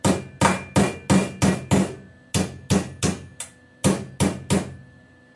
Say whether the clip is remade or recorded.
recorded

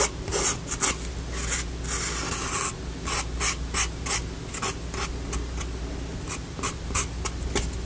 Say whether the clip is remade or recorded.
recorded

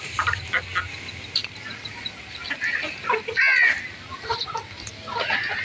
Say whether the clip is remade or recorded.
recorded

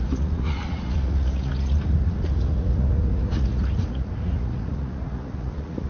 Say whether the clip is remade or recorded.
remade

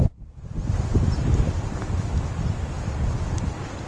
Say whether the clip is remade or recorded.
recorded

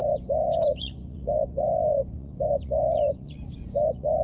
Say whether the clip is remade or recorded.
remade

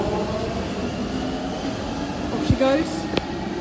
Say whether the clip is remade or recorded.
recorded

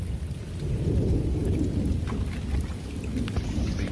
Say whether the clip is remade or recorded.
recorded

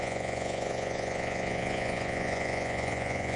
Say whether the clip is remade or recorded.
remade